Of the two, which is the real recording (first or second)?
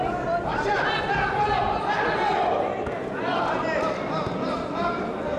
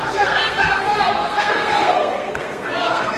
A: first